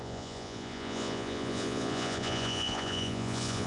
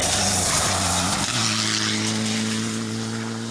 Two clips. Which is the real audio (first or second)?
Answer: second